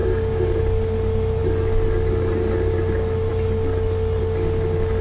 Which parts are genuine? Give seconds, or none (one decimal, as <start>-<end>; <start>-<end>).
0.6-5.0